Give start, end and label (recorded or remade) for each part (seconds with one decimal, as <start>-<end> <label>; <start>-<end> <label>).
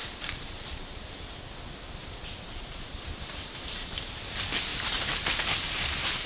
0.0-1.3 remade; 1.3-2.0 recorded; 2.0-3.7 remade; 3.7-6.3 recorded